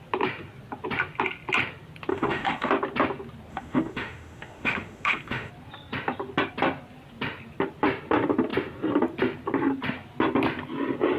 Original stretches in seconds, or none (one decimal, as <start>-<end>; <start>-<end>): 0.0-2.1; 2.7-3.5; 5.5-11.2

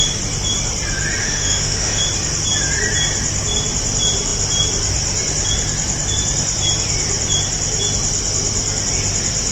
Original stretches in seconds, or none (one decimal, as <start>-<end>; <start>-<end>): 0.0-1.2; 2.0-9.5

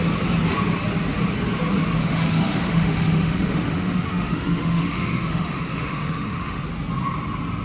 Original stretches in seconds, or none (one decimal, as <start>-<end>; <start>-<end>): 0.0-2.0; 6.6-7.6

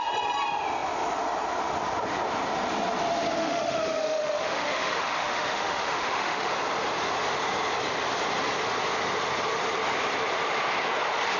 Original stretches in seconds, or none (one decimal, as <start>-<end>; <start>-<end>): 0.0-3.4; 6.5-11.4

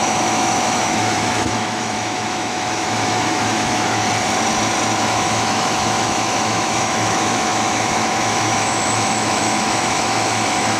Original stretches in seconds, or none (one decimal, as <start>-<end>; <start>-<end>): 4.0-5.0